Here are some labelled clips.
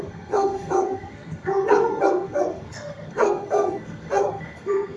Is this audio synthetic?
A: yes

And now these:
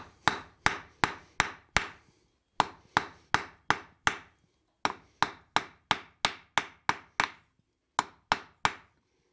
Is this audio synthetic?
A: no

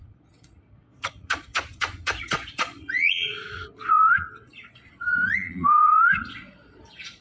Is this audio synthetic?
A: yes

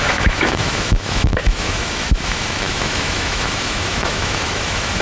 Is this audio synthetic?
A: yes